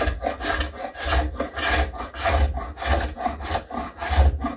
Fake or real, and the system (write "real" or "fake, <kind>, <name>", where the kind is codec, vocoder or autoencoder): real